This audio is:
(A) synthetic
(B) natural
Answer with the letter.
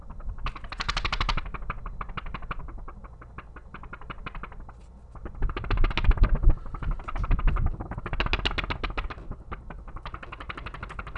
B